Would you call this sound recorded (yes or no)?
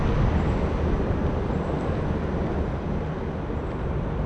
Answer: yes